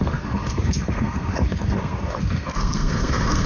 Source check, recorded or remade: remade